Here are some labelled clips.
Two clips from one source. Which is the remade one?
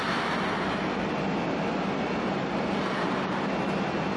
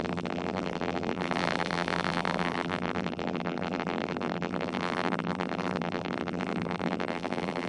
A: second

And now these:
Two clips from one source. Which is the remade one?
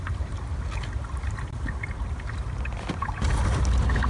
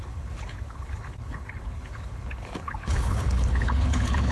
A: second